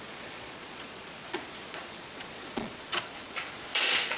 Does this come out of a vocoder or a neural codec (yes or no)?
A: yes